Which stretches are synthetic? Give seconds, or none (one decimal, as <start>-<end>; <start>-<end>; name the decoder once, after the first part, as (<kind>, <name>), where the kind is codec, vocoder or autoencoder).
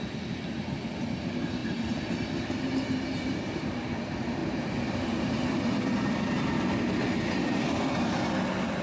4.4-5.6 (vocoder, BigVGAN v2)